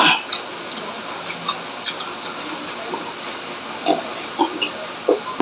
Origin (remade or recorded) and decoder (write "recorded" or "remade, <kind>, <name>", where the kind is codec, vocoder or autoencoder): recorded